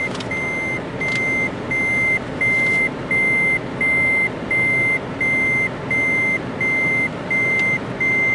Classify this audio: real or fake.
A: real